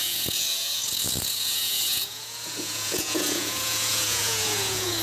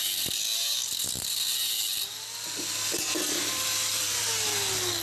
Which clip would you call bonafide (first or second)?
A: second